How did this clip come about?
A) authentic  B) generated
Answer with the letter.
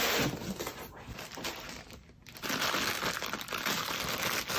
A